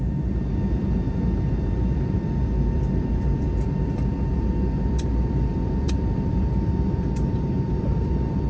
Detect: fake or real fake